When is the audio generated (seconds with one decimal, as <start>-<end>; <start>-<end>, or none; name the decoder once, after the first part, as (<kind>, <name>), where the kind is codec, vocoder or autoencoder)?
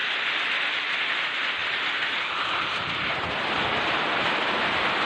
0.7-5.0 (vocoder, BigVGAN v2)